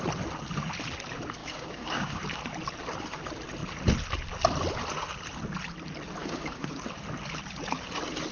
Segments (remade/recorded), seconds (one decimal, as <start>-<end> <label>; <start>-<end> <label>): 0.0-1.4 recorded; 1.4-2.2 remade; 2.2-6.2 recorded; 6.2-6.8 remade; 6.8-8.3 recorded